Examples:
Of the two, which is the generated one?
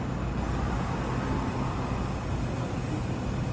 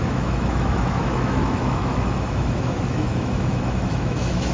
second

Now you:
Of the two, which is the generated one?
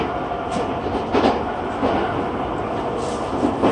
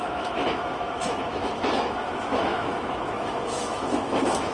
second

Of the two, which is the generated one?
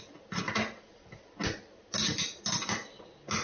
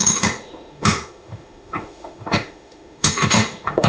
second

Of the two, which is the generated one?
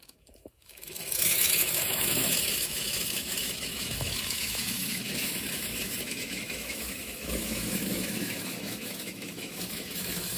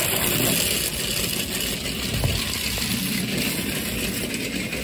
first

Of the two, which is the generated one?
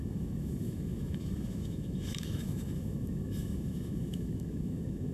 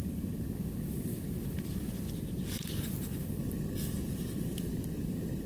first